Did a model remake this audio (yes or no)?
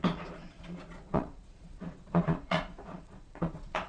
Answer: yes